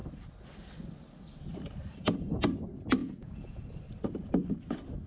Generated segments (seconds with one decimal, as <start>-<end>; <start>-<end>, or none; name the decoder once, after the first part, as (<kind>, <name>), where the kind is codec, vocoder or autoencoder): 3.0-3.6 (vocoder, Vocos)